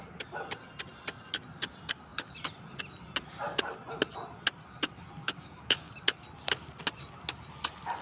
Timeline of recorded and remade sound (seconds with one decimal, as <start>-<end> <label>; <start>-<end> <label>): 0.0-5.2 recorded; 5.2-5.9 remade; 5.9-8.0 recorded